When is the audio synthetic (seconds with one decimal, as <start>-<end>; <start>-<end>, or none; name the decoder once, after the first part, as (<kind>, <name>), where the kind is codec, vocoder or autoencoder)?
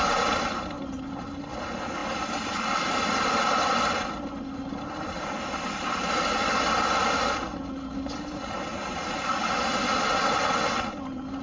none